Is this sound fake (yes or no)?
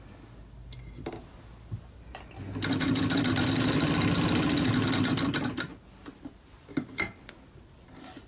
no